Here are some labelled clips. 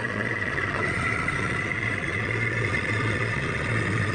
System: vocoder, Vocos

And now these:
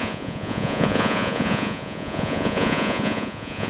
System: vocoder, Vocos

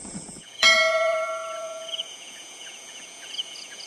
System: vocoder, Vocos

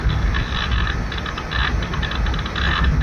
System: none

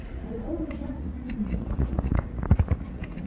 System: vocoder, Vocos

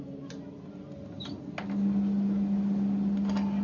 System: none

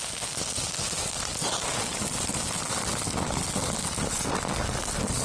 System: none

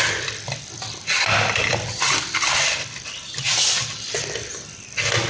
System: none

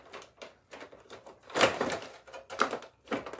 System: none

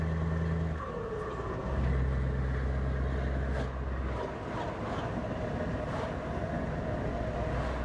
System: none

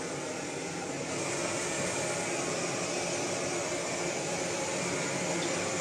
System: none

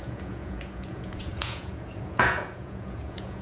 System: vocoder, Vocos